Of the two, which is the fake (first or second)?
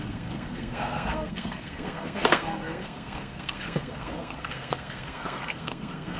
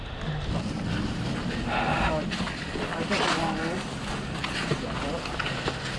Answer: first